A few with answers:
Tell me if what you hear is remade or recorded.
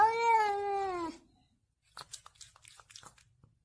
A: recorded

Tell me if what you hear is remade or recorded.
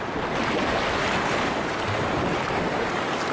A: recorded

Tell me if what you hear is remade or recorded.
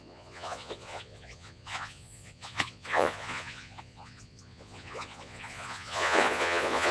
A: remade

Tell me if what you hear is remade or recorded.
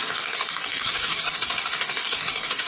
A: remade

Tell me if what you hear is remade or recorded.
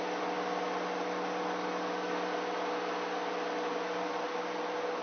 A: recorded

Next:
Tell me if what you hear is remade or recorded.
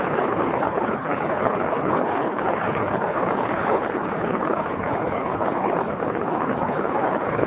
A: remade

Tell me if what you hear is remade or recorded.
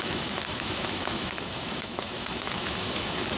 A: remade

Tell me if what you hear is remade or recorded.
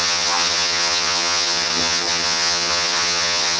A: remade